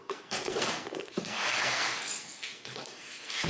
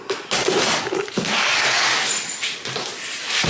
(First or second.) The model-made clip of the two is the first